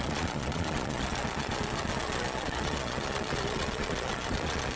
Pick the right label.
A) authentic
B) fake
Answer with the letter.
B